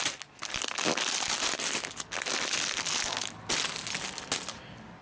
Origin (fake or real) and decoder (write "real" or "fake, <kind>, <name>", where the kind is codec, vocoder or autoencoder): real